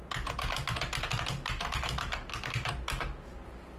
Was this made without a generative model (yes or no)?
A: yes